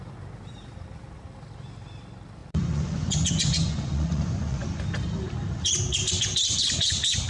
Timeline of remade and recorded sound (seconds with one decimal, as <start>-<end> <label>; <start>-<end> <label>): 0.0-2.4 recorded; 2.4-4.8 remade; 4.8-7.3 recorded